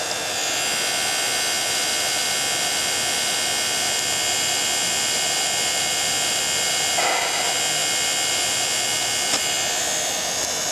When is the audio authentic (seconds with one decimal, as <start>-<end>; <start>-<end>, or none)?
0.0-10.7